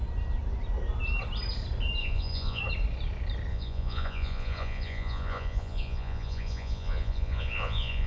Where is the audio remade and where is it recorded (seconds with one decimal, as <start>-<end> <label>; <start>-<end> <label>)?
0.0-2.0 recorded; 2.0-2.6 remade; 2.6-3.5 recorded; 3.5-8.1 remade